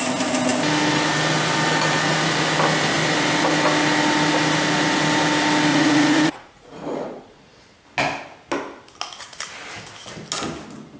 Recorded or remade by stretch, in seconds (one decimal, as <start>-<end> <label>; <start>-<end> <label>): 0.0-5.7 recorded; 5.7-7.4 remade; 7.4-11.0 recorded